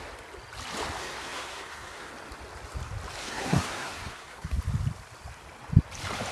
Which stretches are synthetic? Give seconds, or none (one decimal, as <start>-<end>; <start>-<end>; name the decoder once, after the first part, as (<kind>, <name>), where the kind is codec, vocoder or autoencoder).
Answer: 1.0-2.1 (codec, SNAC); 3.2-4.6